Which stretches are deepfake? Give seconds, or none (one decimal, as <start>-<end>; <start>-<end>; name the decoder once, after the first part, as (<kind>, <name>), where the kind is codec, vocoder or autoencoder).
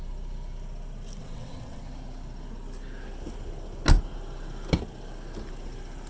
1.2-1.8 (vocoder, WaveNeXt)